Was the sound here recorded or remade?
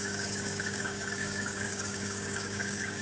remade